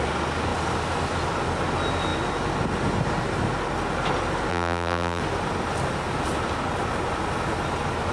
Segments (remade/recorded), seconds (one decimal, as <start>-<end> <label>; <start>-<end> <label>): 0.0-4.5 recorded; 4.5-5.2 remade; 5.2-8.1 recorded